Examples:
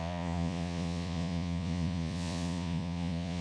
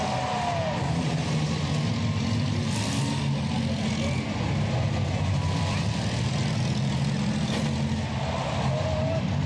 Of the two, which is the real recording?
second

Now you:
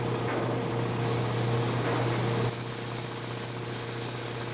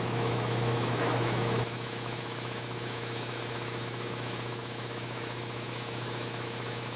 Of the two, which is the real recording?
first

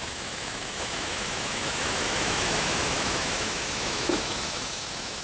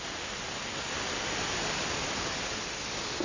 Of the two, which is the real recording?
second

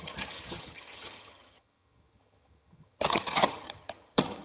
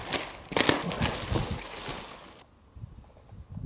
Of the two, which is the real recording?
second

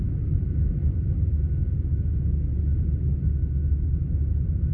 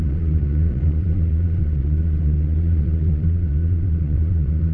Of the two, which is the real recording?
first